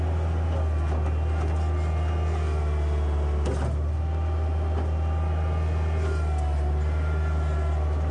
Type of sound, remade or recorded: recorded